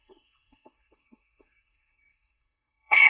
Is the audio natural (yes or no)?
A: no